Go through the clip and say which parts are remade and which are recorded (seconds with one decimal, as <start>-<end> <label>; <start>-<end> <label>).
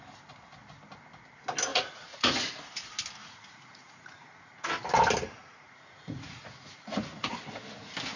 0.0-1.7 recorded; 1.7-2.5 remade; 2.5-3.2 recorded; 3.2-4.7 remade; 4.7-5.4 recorded; 5.4-7.3 remade; 7.3-8.2 recorded